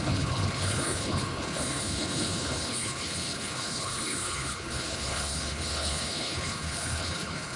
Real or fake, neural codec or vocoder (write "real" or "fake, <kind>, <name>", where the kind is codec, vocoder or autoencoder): fake, codec, HILCodec